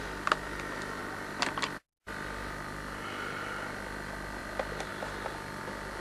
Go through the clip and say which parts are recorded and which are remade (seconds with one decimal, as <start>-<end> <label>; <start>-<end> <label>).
0.0-6.0 recorded